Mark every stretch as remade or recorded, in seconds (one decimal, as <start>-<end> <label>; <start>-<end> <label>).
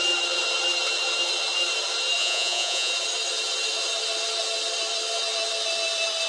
0.0-2.2 recorded; 2.2-2.9 remade; 2.9-6.3 recorded